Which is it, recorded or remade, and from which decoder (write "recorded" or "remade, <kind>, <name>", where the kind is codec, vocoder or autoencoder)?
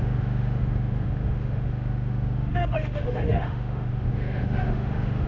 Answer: remade, autoencoder, DAC-VAE